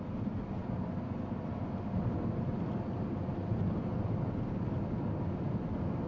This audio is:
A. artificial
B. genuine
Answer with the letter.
B